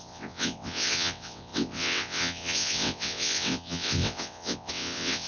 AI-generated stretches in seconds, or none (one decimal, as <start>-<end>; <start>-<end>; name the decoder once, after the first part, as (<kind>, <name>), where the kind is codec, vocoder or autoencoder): 0.0-5.3 (vocoder, WaveNeXt)

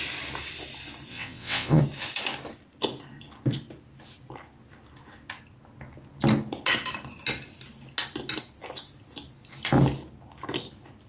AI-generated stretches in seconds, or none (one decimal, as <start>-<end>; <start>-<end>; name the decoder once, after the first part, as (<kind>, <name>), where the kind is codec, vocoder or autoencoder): 1.1-1.8 (vocoder, WaveNeXt)